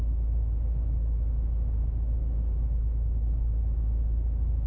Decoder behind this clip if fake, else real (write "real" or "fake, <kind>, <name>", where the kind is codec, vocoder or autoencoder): real